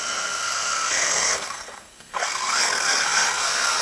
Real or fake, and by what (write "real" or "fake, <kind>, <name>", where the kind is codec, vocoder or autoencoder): fake, codec, SNAC